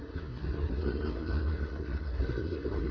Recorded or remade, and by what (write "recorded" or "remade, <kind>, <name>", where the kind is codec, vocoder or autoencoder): remade, codec, SNAC